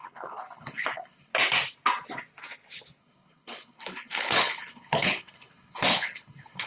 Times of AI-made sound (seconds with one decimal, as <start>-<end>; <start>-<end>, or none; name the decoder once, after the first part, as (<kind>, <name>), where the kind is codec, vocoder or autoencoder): 0.0-1.3 (codec, HILCodec); 3.0-6.7